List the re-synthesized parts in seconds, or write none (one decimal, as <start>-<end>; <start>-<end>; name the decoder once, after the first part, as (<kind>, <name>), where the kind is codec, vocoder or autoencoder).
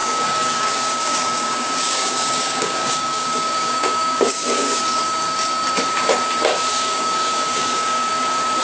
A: 0.0-4.8 (codec, DAC); 6.7-8.1